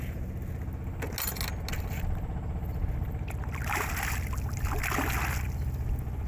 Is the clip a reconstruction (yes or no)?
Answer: no